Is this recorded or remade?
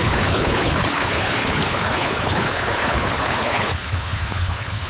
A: remade